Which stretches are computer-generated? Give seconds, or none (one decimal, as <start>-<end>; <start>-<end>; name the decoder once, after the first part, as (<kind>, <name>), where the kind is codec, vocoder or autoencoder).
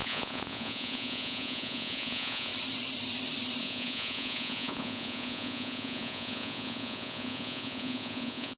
0.0-2.5 (vocoder, Vocos); 3.6-8.6